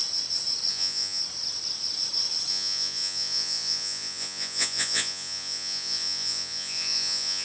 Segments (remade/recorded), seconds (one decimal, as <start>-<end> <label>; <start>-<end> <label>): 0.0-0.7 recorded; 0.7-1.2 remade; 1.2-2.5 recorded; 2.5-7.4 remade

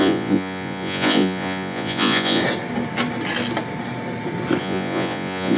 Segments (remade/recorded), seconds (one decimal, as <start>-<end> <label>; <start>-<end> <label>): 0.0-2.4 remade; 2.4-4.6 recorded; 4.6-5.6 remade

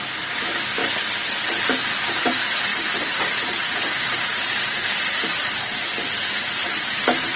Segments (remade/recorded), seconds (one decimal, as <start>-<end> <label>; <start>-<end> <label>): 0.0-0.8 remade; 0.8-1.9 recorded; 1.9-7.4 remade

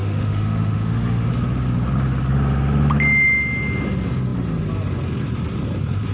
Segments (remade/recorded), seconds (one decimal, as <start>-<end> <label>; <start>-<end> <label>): 0.0-1.3 remade; 1.3-6.1 recorded

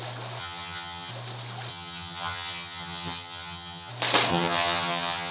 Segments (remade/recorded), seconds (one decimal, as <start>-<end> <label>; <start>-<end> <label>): 0.0-0.4 recorded; 0.4-1.1 remade; 1.1-1.7 recorded; 1.7-3.9 remade; 3.9-4.3 recorded; 4.3-5.3 remade